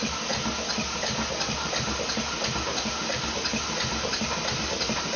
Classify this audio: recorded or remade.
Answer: recorded